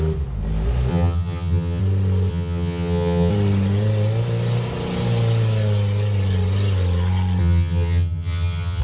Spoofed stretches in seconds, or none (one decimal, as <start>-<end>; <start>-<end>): 0.9-1.8; 2.3-3.3; 7.4-8.8